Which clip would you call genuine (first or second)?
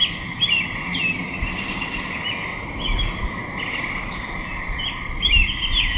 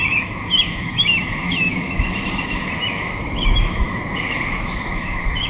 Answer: first